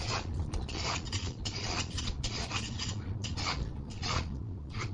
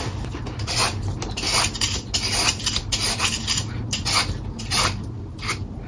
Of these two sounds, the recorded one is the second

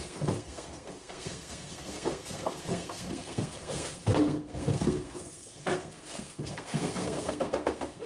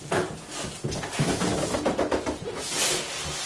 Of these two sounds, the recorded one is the second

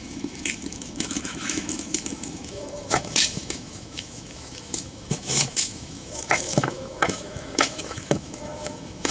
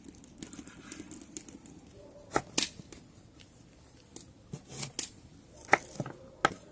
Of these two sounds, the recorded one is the second